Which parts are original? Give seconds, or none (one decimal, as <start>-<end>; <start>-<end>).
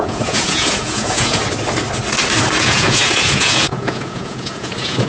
1.4-2.6